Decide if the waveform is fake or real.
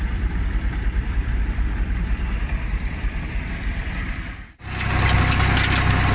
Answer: real